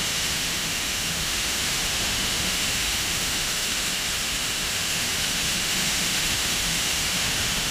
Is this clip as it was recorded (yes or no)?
no